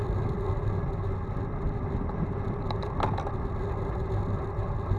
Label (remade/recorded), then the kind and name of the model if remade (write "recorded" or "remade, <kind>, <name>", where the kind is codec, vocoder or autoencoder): recorded